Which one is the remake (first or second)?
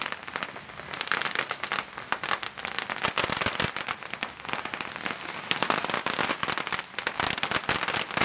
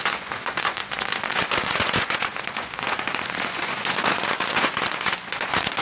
second